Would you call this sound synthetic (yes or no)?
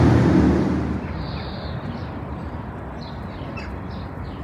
no